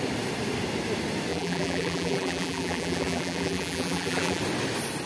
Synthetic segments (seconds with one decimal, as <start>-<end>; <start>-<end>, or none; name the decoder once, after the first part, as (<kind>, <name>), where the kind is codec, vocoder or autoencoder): 1.3-4.4 (vocoder, BigVGAN v2)